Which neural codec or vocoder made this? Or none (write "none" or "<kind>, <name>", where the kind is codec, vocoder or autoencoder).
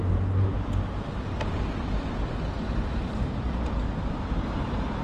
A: none